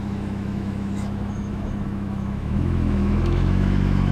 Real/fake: fake